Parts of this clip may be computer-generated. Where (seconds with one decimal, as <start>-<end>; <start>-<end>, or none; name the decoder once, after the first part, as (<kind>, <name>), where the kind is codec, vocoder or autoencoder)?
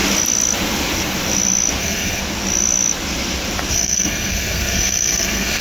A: 1.8-2.2 (codec, SNAC); 3.7-5.6